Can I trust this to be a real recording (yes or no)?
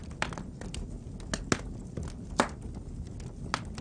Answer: yes